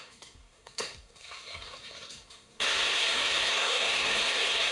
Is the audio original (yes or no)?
no